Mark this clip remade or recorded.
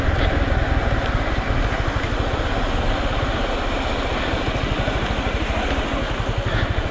recorded